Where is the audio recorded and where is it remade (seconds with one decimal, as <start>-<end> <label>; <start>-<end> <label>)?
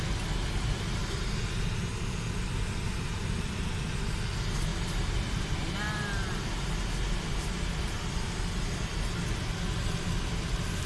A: 0.0-10.9 recorded